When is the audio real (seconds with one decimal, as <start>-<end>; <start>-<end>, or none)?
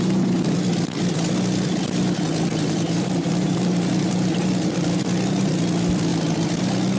0.0-2.5; 4.7-7.0